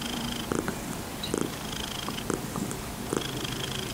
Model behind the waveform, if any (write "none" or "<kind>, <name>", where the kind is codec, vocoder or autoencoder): vocoder, BigVGAN v2